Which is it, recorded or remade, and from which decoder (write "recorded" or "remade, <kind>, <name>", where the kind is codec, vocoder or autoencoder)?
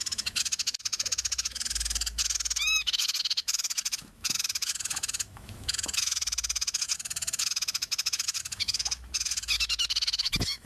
remade, autoencoder, DAC-VAE